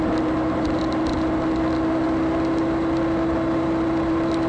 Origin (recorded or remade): recorded